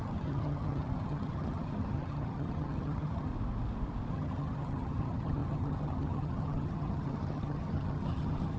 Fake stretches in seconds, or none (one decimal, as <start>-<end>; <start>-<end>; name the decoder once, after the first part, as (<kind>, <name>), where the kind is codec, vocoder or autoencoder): 0.0-3.3 (vocoder, HiFi-GAN); 4.1-8.6